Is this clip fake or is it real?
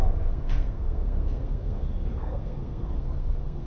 fake